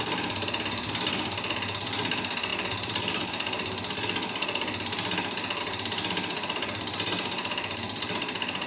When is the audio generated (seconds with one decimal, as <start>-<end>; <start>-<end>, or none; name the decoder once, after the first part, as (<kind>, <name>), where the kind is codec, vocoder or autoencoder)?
none